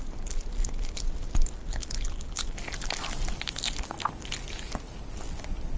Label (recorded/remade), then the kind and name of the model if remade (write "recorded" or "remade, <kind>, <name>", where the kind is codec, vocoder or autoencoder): recorded